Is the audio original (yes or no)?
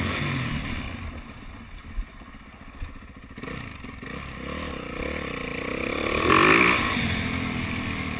yes